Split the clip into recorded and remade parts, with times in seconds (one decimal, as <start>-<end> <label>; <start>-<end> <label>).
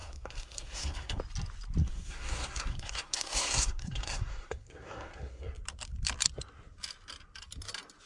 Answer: 0.0-1.2 remade; 1.2-1.8 recorded; 1.8-5.6 remade; 5.6-8.1 recorded